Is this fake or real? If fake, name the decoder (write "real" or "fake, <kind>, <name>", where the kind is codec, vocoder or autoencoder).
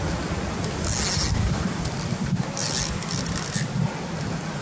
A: real